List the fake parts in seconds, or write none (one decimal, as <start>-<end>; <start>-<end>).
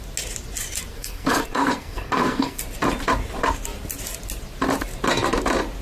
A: 0.9-2.6